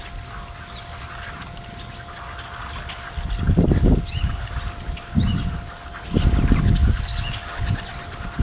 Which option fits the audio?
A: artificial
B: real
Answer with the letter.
B